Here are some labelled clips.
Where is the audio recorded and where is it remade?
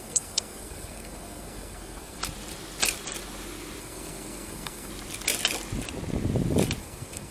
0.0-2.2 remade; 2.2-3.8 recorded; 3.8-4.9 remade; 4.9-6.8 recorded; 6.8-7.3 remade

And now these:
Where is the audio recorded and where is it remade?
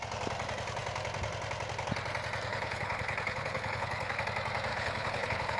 0.0-2.5 recorded; 2.5-4.2 remade; 4.2-4.7 recorded; 4.7-5.6 remade